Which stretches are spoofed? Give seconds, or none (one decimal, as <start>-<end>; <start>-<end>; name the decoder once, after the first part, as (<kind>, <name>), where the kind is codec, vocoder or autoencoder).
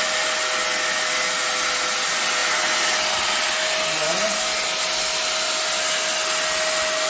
none